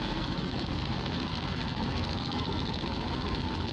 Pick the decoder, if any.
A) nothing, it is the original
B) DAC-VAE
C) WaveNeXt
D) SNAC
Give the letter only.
D